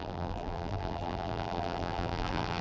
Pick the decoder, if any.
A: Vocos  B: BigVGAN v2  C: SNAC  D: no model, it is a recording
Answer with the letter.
B